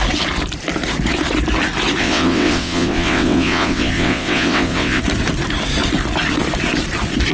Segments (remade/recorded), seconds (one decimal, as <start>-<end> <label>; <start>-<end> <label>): 0.0-2.0 recorded; 2.0-5.0 remade; 5.0-7.3 recorded